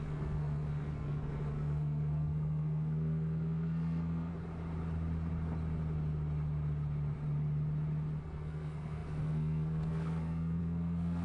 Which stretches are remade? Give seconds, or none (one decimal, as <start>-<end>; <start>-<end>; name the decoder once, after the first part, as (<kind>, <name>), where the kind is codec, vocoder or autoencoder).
0.0-4.3 (codec, SNAC); 8.2-11.2